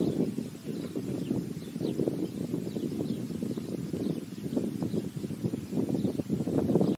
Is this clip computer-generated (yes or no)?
no